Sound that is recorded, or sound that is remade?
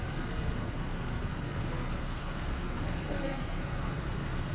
remade